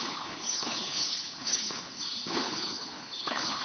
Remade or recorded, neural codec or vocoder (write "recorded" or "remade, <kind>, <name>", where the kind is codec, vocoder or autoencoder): remade, codec, HILCodec